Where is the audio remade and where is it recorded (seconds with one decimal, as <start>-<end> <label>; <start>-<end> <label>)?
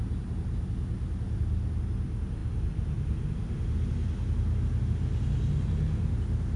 0.0-6.6 recorded